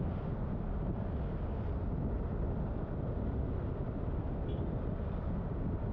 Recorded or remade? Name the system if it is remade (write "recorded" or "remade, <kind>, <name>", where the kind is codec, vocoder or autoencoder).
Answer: recorded